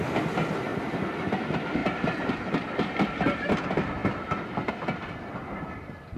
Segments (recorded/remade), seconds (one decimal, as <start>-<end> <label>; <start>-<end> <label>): 0.0-1.8 recorded; 1.8-2.9 remade; 2.9-6.2 recorded